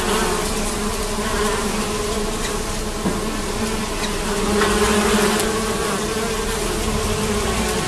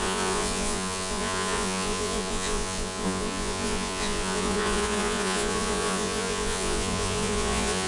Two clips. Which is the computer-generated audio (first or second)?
second